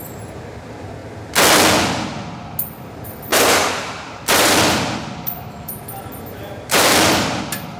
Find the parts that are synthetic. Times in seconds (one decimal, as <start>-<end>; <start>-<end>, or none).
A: 0.0-1.0; 2.7-7.8